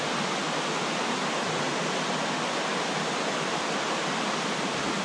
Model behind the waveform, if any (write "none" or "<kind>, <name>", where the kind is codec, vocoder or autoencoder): none